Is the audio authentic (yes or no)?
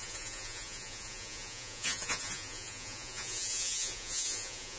no